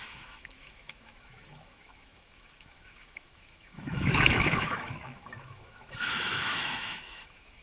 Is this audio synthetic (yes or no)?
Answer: yes